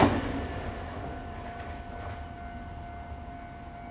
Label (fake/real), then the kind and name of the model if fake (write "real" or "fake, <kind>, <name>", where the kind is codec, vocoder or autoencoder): real